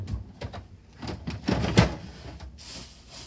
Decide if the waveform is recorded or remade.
recorded